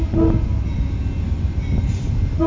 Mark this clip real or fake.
real